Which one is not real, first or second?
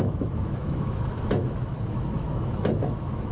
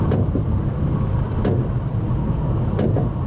first